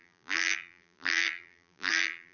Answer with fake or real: fake